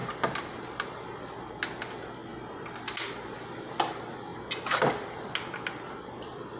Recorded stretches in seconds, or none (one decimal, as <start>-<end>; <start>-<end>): 0.0-6.6